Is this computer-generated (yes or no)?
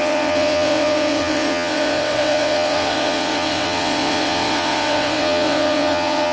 yes